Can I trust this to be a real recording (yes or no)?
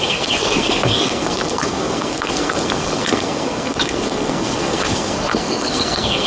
no